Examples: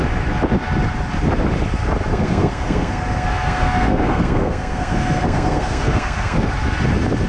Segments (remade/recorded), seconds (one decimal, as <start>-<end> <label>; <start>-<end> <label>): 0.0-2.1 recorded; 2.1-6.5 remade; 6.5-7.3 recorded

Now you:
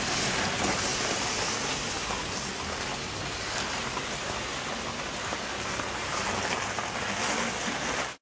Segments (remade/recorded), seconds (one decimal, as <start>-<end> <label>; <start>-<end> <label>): 0.0-8.2 recorded

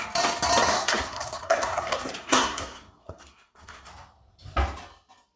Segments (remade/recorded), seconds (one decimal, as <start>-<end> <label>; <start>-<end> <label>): 0.0-0.7 recorded; 0.7-3.9 remade; 3.9-5.4 recorded

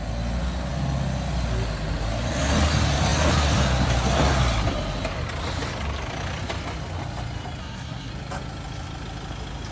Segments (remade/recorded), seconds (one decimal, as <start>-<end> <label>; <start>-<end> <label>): 0.0-7.6 recorded; 7.6-8.1 remade; 8.1-9.7 recorded

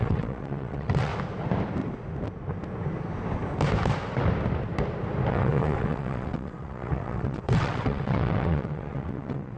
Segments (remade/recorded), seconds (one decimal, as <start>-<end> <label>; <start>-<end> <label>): 0.0-1.1 remade; 1.1-5.3 recorded; 5.3-9.6 remade

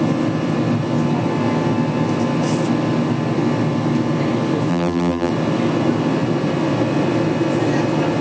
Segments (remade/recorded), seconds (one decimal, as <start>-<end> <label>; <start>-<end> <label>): 0.0-4.7 recorded; 4.7-5.3 remade; 5.3-8.2 recorded

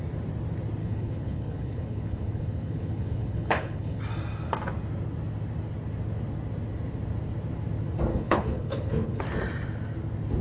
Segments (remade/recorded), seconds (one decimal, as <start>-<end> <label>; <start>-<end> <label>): 0.0-0.8 recorded; 0.8-4.0 remade; 4.0-8.1 recorded; 8.1-9.2 remade; 9.2-10.4 recorded

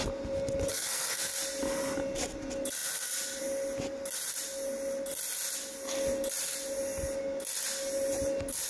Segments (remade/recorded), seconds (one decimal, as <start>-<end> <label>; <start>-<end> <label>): 0.0-0.7 recorded; 0.7-1.3 remade; 1.3-8.7 recorded